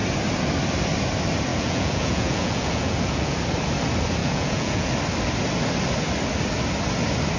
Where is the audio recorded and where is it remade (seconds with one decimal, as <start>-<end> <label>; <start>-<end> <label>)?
0.0-1.5 recorded; 1.5-3.4 remade; 3.4-4.2 recorded; 4.2-4.9 remade; 4.9-7.4 recorded